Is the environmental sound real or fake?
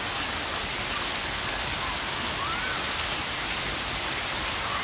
real